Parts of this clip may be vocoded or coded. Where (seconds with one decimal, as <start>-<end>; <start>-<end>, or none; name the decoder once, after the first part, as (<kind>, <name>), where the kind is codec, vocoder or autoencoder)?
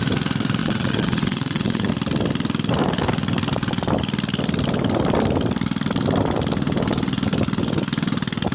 0.6-1.9 (vocoder, Vocos)